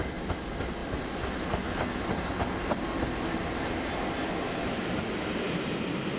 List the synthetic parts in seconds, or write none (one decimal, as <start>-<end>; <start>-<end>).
none